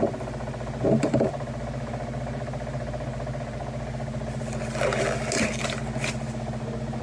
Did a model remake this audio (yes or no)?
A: no